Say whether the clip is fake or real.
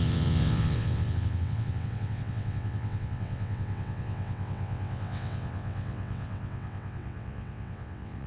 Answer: fake